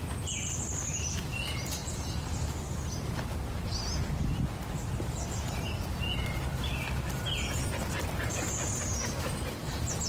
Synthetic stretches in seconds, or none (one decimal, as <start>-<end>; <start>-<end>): none